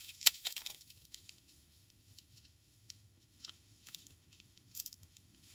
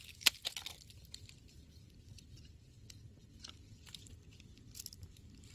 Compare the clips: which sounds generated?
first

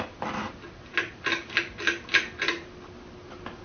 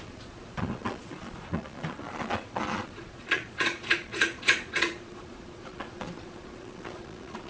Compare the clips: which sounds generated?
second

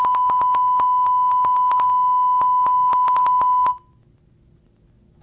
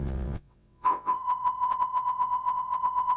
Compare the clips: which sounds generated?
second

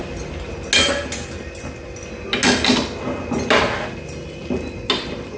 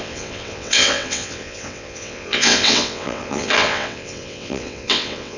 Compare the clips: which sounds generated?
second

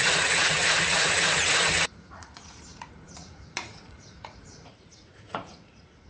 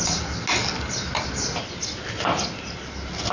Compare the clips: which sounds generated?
first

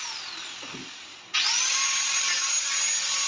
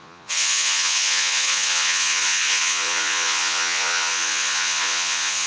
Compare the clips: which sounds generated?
second